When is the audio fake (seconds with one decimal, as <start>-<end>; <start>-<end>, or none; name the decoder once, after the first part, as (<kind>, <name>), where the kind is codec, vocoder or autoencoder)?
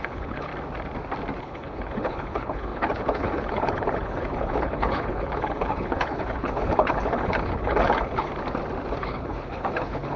0.0-0.5 (codec, HILCodec); 1.4-8.3; 9.0-10.2